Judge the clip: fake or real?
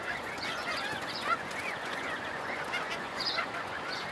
fake